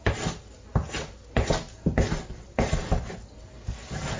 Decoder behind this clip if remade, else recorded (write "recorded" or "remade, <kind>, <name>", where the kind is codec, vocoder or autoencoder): recorded